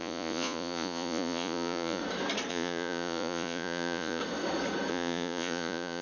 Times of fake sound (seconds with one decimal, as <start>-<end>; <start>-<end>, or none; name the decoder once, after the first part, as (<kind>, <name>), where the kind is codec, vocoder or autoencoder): 0.0-2.0 (vocoder, Vocos); 2.5-4.2; 4.9-6.0